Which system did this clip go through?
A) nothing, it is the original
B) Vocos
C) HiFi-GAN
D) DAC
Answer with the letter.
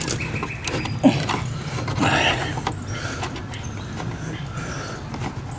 A